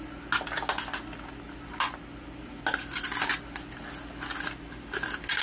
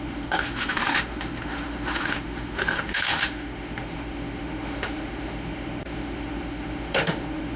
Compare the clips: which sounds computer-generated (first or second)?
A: second